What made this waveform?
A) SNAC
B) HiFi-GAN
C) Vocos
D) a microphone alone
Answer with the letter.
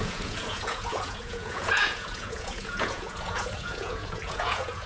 C